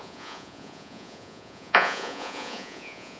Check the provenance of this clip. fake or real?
fake